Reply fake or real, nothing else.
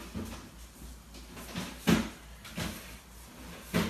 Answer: real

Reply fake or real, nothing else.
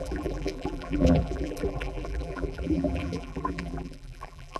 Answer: fake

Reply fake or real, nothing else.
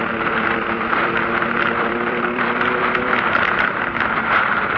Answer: fake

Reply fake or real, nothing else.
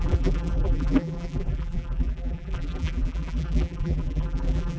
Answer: fake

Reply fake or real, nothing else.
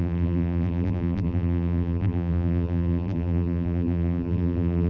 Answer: fake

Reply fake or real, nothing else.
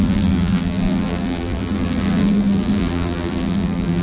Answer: fake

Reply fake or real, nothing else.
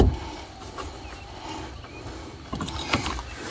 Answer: real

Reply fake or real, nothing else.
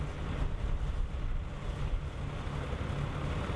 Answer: real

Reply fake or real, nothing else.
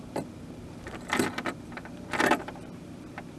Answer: fake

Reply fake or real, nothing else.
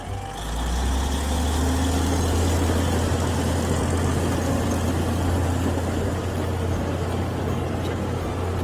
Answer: real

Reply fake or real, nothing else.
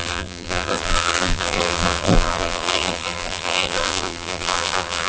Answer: fake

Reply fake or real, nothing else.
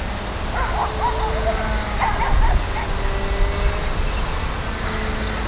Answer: real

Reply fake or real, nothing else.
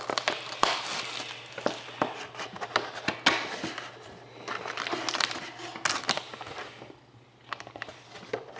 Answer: real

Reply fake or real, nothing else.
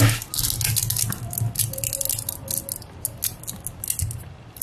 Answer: real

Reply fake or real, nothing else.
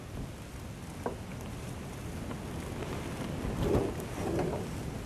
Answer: real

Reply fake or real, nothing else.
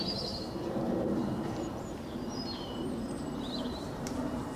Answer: fake